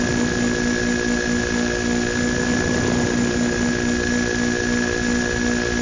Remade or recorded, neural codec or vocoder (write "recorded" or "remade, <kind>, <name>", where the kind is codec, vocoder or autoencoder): recorded